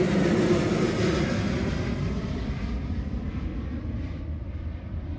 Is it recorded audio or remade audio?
recorded